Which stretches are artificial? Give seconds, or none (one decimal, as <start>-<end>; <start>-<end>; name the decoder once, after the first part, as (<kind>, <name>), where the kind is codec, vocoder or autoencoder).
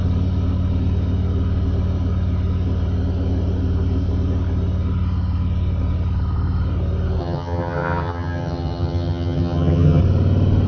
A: 7.2-10.0 (vocoder, HiFi-GAN)